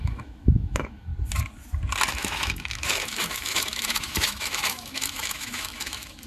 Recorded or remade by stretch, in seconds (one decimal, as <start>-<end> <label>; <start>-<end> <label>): 0.0-1.1 remade; 1.1-2.1 recorded; 2.1-6.3 remade